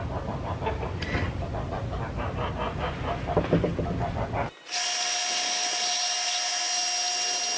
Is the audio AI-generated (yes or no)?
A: no